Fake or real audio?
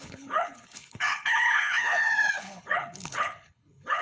fake